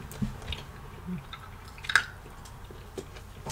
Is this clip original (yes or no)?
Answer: yes